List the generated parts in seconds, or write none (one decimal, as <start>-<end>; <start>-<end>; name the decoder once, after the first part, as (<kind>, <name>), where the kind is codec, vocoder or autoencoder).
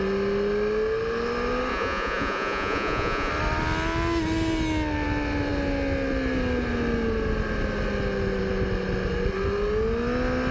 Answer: 1.7-3.3 (vocoder, Vocos)